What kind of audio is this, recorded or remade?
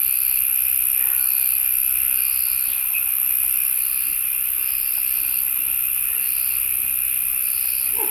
recorded